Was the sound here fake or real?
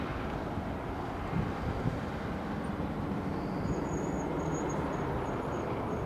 real